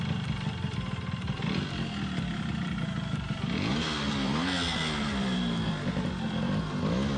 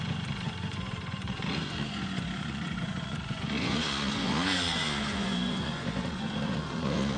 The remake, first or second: second